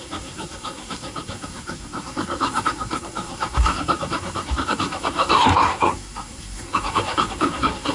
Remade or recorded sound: remade